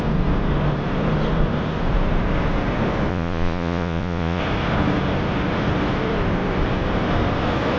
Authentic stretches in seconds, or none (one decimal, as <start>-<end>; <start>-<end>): 0.0-3.1; 4.4-7.8